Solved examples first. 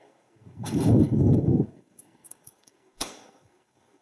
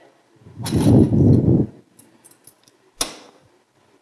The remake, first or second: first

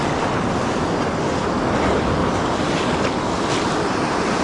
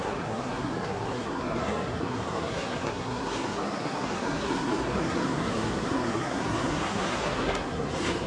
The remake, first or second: second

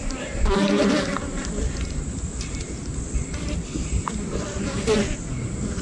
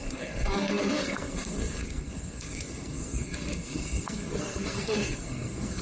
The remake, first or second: second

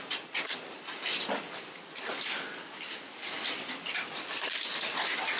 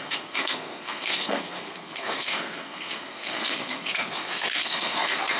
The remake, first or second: second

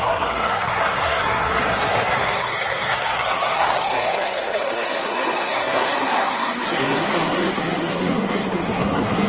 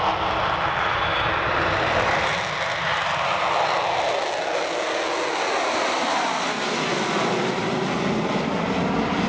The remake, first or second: first